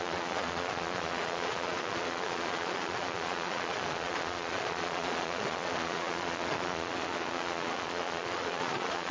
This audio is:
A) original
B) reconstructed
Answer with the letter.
B